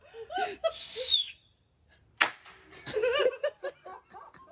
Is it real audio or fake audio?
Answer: real